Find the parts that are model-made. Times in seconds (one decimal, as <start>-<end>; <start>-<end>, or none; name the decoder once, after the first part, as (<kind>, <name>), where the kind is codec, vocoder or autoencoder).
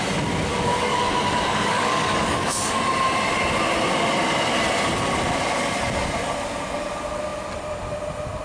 0.5-2.8 (codec, DAC)